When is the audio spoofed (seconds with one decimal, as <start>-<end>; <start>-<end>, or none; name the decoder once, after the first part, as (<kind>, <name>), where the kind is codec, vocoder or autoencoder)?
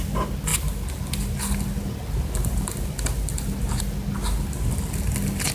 none